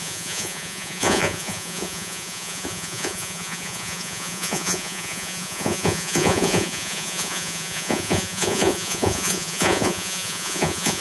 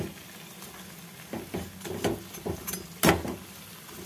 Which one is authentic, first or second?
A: second